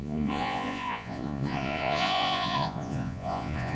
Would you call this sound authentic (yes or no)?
no